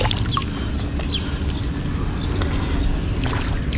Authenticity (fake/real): real